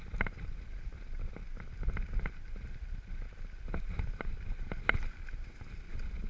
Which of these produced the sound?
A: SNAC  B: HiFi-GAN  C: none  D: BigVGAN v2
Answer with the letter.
C